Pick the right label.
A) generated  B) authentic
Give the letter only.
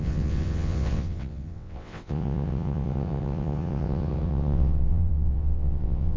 A